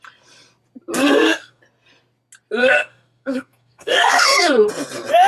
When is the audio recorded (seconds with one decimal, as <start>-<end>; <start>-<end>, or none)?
0.0-1.0; 1.6-2.6; 4.7-5.3